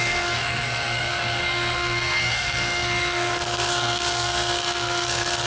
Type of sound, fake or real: fake